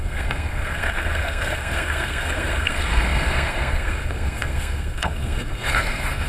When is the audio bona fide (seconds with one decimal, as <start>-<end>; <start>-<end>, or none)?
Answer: none